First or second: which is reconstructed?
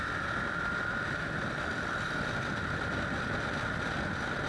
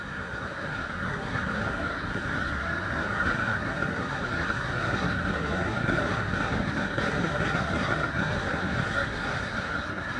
second